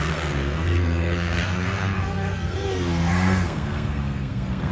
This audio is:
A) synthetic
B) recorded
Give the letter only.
A